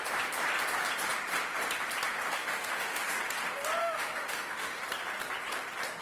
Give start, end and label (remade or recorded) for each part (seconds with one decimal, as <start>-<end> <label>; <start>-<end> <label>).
0.0-2.3 recorded; 2.3-3.2 remade; 3.2-3.8 recorded; 3.8-4.8 remade; 4.8-6.0 recorded